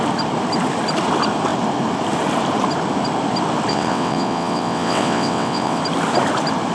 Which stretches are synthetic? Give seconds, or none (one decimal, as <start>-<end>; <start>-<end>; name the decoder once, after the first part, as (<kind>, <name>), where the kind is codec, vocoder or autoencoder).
3.7-5.8 (vocoder, WaveNeXt)